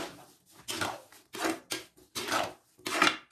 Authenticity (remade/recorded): recorded